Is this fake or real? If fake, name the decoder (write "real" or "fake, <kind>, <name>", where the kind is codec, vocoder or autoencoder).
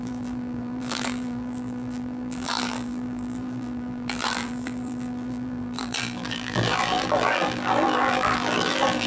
fake, vocoder, BigVGAN v2